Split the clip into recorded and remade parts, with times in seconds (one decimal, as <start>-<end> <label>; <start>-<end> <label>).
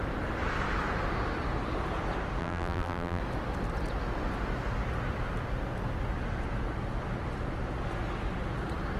0.0-2.4 recorded; 2.4-3.2 remade; 3.2-9.0 recorded